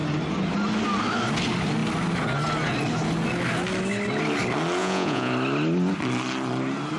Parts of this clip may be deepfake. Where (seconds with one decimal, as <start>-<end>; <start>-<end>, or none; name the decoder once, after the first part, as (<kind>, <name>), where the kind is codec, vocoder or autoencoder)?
4.8-5.3 (vocoder, Vocos)

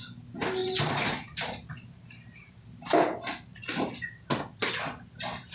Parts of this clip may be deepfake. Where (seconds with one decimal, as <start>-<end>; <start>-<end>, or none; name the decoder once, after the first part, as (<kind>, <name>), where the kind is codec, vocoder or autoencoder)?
0.6-2.6 (vocoder, BigVGAN v2)

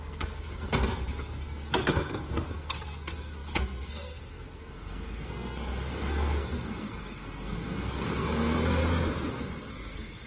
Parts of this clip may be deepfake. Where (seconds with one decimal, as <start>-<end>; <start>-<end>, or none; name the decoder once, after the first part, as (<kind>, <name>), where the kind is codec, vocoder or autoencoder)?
0.0-8.8 (codec, SNAC); 9.3-10.3

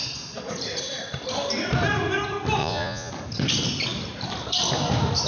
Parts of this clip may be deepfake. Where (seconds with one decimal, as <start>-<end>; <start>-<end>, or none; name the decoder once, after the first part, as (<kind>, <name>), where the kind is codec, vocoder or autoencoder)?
2.6-3.1 (vocoder, Vocos)

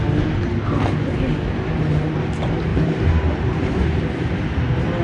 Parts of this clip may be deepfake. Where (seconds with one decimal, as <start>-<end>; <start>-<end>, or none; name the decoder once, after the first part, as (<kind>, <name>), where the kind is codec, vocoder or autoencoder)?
2.7-3.7 (vocoder, BigVGAN v2)

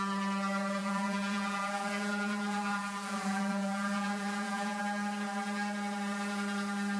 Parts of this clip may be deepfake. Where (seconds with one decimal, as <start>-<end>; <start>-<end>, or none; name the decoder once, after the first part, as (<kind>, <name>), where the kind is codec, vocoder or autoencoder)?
0.8-4.8 (vocoder, Vocos)